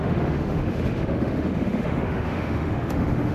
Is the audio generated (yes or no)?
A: yes